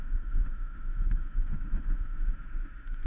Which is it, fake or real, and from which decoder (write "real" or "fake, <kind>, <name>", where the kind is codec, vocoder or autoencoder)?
fake, autoencoder, DAC-VAE